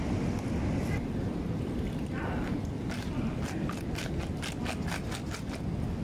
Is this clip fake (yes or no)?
no